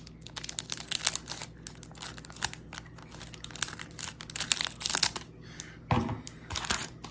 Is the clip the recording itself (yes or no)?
yes